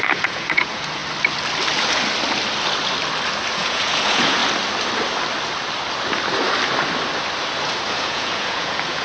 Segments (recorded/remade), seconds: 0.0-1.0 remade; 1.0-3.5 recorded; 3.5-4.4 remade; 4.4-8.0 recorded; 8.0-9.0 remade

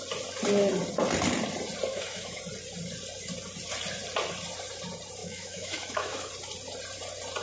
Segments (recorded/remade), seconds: 0.0-1.9 recorded; 1.9-2.4 remade; 2.4-5.2 recorded; 5.2-6.3 remade; 6.3-7.4 recorded

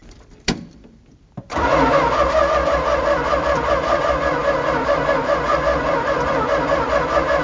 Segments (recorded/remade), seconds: 0.0-1.7 remade; 1.7-2.5 recorded; 2.5-4.4 remade; 4.4-5.2 recorded; 5.2-7.4 remade

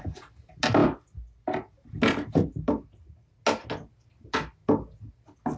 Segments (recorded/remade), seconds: 0.0-5.6 recorded

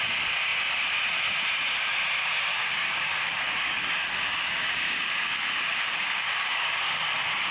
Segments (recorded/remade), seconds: 0.0-2.5 recorded; 2.5-7.0 remade; 7.0-7.5 recorded

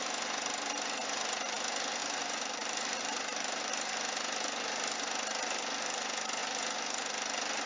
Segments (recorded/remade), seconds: 0.0-2.0 recorded; 2.0-3.7 remade; 3.7-7.7 recorded

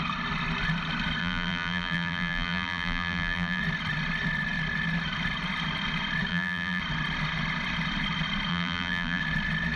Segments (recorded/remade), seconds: 0.0-1.2 recorded; 1.2-3.6 remade; 3.6-6.3 recorded; 6.3-6.8 remade; 6.8-8.5 recorded; 8.5-9.2 remade; 9.2-9.8 recorded

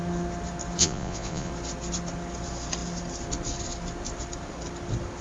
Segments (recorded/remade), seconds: 0.0-0.8 recorded; 0.8-1.5 remade; 1.5-5.2 recorded